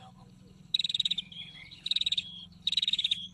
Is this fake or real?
fake